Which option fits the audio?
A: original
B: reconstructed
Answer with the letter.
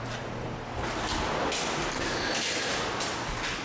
A